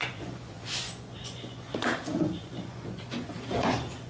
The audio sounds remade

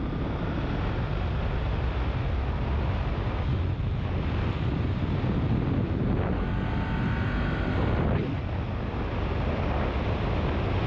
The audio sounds recorded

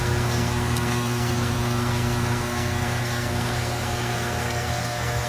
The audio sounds remade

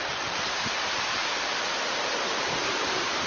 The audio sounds recorded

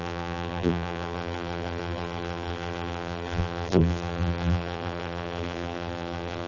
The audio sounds remade